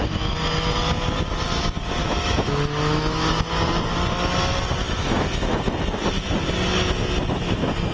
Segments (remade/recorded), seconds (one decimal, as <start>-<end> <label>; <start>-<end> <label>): 0.0-2.0 recorded; 2.0-3.3 remade; 3.3-7.9 recorded